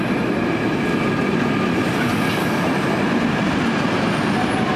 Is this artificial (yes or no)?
no